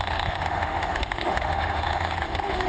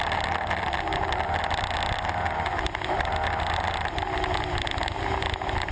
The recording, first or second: second